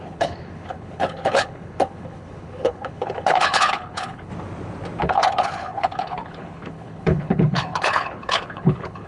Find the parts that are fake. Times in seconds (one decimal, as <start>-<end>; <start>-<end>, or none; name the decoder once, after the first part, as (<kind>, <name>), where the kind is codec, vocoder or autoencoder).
0.0-4.3 (codec, HILCodec); 5.0-9.1